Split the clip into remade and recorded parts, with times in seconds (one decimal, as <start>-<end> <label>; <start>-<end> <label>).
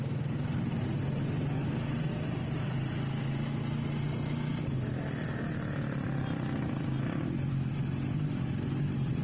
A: 0.0-1.6 recorded; 1.6-2.9 remade; 2.9-7.7 recorded; 7.7-9.2 remade